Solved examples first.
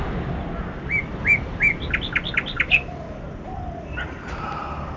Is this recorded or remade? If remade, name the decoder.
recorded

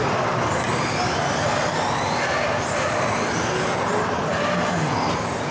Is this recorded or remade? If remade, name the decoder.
recorded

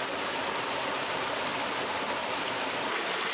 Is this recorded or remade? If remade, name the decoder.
recorded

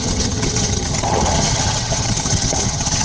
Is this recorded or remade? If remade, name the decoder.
remade, vocoder, HiFi-GAN